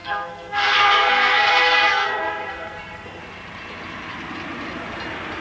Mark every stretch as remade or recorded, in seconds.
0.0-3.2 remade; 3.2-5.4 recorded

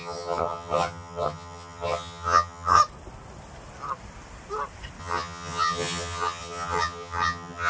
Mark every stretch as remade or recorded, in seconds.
0.0-2.8 remade; 2.8-5.0 recorded; 5.0-7.7 remade

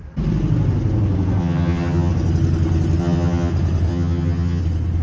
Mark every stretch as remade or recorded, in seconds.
0.0-1.4 recorded; 1.4-2.1 remade; 2.1-3.0 recorded; 3.0-3.5 remade; 3.5-3.9 recorded; 3.9-4.6 remade; 4.6-5.0 recorded

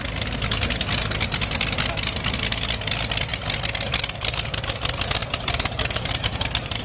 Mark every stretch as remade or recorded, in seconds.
0.0-5.2 recorded; 5.2-6.8 remade

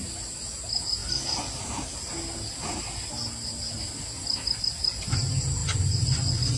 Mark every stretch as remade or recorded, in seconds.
0.0-5.6 recorded; 5.6-6.6 remade

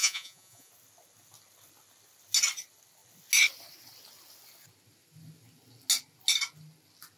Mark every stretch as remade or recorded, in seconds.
0.0-0.7 remade; 0.7-7.2 recorded

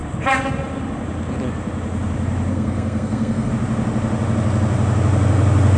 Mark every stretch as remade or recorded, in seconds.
0.0-2.5 recorded; 2.5-3.5 remade; 3.5-5.8 recorded

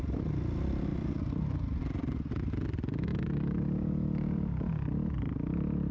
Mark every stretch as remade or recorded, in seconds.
0.0-5.9 recorded